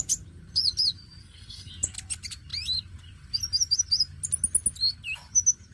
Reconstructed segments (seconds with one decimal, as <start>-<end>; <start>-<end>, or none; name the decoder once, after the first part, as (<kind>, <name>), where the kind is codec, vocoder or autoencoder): 1.2-1.7 (codec, SNAC)